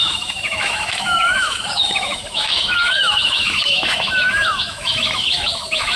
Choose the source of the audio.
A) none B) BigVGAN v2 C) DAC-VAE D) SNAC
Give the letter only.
C